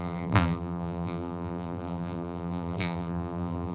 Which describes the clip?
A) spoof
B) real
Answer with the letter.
A